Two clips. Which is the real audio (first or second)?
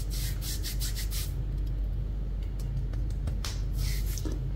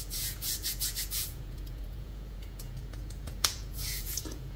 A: first